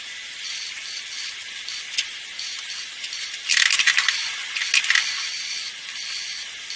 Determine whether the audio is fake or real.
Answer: real